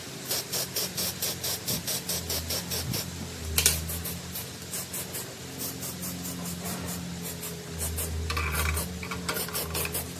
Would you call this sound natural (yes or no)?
yes